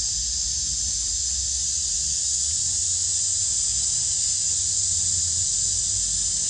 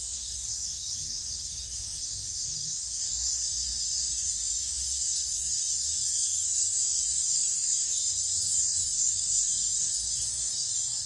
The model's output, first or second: second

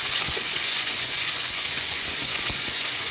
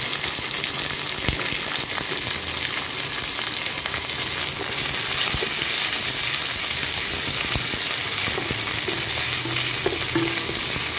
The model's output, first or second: first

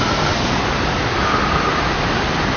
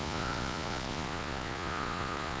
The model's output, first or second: second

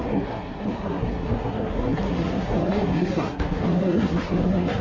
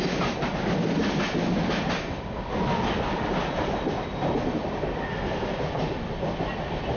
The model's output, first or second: first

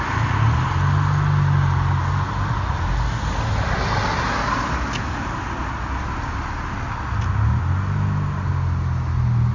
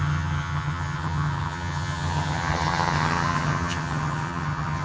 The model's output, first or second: second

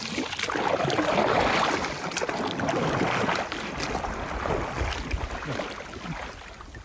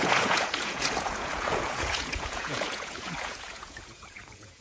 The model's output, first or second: second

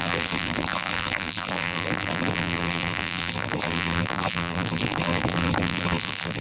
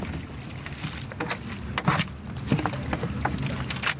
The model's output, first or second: first